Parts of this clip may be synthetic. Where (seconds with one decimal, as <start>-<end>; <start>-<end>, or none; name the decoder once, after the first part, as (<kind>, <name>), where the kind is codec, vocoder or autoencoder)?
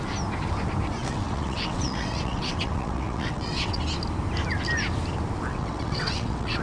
1.0-3.8 (vocoder, WaveNeXt); 5.5-6.6